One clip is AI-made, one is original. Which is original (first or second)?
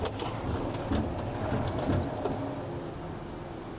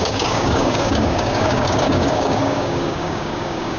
first